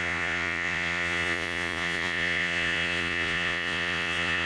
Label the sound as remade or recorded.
remade